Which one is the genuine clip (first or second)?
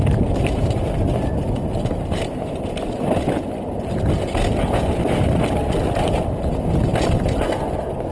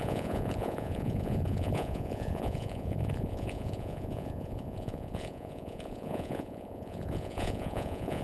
first